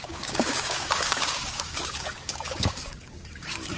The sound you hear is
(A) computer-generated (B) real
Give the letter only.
A